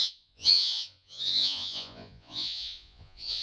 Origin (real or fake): fake